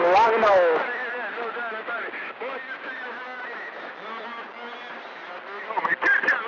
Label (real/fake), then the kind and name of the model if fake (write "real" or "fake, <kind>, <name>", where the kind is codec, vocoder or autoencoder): real